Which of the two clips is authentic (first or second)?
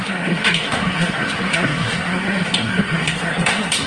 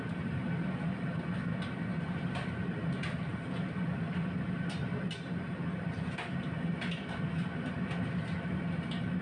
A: second